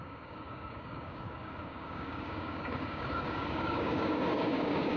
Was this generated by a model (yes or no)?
yes